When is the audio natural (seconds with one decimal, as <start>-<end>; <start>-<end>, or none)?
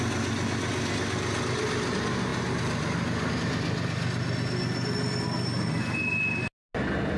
0.0-7.2